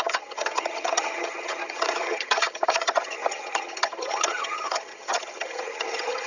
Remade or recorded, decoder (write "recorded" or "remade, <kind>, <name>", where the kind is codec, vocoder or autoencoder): remade, vocoder, HiFi-GAN